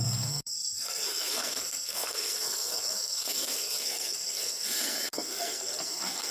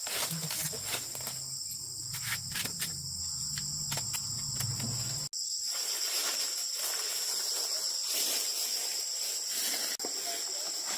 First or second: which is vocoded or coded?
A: first